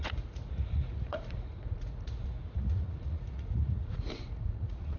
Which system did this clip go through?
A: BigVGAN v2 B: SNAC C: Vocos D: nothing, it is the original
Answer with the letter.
C